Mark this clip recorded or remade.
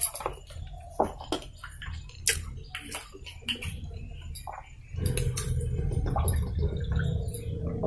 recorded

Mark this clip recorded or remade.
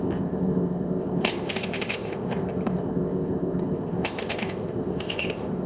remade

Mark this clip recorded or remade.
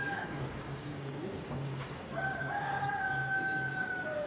remade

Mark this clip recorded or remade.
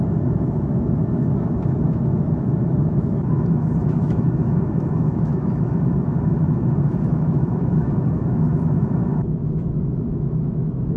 remade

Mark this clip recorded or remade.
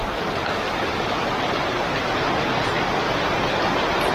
recorded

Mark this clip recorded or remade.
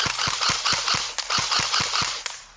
recorded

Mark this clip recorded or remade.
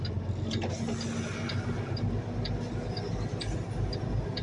recorded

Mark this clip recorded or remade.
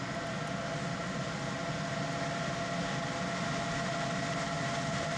recorded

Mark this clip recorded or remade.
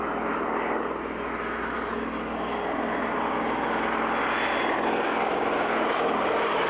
recorded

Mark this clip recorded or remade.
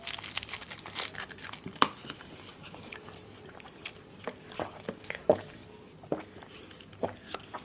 recorded